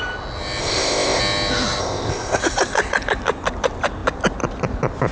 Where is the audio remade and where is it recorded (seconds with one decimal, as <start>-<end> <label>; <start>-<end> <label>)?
0.0-0.6 recorded; 0.6-1.2 remade; 1.2-1.8 recorded; 1.8-2.4 remade; 2.4-5.1 recorded